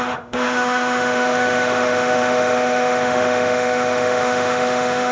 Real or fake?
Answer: fake